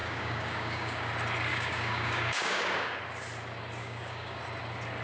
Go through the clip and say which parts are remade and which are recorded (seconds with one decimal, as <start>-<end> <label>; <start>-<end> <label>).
0.0-1.1 remade; 1.1-1.5 recorded; 1.5-3.0 remade; 3.0-3.8 recorded; 3.8-4.4 remade; 4.4-5.0 recorded